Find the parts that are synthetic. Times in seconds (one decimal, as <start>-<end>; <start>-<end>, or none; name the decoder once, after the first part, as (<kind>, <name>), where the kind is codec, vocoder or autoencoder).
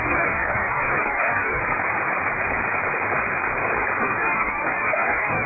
0.0-1.6 (codec, DAC); 4.0-5.5